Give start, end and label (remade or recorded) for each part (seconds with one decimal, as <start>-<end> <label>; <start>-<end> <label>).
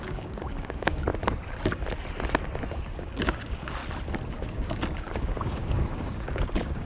0.0-1.1 remade; 1.1-2.9 recorded; 2.9-3.8 remade; 3.8-4.3 recorded; 4.3-6.9 remade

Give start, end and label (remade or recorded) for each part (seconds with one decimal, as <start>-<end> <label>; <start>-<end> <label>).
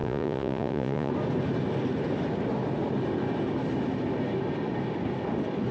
0.0-1.1 remade; 1.1-5.7 recorded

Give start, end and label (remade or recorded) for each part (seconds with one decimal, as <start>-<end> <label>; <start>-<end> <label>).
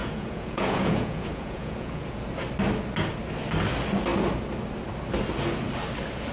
0.0-2.2 remade; 2.2-6.3 recorded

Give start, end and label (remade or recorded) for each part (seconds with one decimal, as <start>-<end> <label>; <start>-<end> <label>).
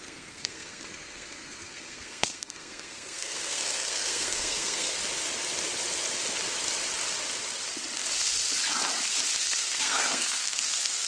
0.0-5.0 remade; 5.0-9.4 recorded; 9.4-11.1 remade